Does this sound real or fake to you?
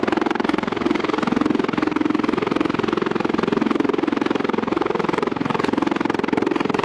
real